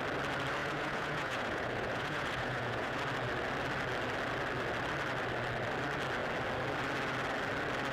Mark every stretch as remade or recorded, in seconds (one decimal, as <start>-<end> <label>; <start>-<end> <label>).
0.0-0.6 recorded; 0.6-3.0 remade; 3.0-7.9 recorded